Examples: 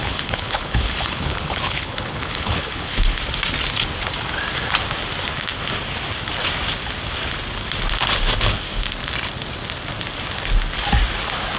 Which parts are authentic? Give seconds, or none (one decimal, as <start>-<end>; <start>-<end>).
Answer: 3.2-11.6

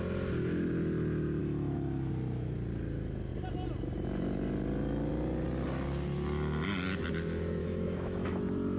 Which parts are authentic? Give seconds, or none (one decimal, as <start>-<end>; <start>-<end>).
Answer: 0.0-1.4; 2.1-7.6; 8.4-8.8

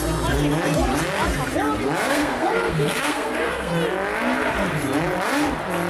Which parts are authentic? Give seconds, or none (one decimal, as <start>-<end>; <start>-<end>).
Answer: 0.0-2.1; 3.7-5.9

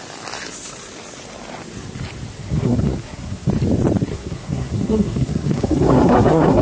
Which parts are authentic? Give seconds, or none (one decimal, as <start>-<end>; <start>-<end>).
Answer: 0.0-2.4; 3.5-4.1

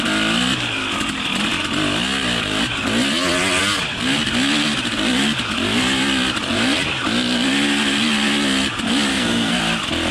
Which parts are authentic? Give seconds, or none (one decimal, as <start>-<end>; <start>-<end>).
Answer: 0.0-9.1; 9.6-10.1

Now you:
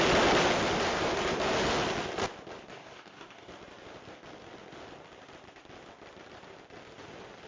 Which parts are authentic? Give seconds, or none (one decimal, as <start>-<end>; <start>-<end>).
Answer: 0.0-2.7; 3.5-7.5

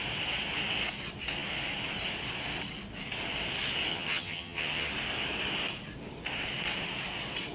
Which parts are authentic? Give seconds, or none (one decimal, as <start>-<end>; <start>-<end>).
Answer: 0.0-3.9; 4.9-7.5

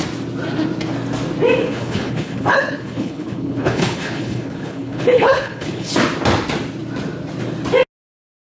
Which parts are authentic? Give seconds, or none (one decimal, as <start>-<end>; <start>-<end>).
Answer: 0.0-1.6; 5.9-8.5